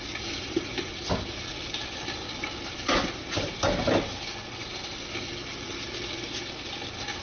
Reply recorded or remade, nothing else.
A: recorded